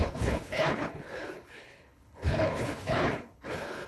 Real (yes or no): no